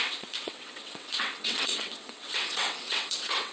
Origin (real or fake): fake